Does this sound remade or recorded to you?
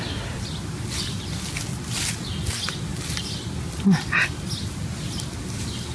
recorded